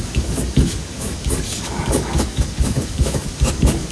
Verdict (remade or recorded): remade